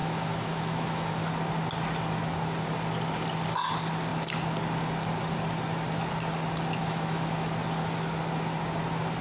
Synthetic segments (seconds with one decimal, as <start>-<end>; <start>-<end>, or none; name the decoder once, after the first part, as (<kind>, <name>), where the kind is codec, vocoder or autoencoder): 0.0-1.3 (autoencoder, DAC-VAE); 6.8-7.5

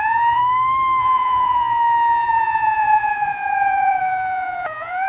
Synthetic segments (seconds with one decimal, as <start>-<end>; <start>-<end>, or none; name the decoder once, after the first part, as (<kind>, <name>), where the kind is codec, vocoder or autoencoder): 0.0-0.4 (vocoder, Vocos); 1.0-5.1

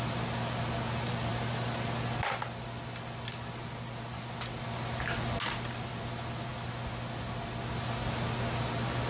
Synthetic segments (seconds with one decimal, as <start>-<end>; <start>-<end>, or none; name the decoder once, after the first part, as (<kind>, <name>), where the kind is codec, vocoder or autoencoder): none